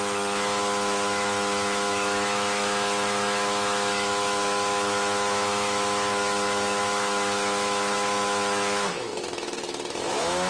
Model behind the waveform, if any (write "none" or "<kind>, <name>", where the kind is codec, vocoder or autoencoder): autoencoder, DAC-VAE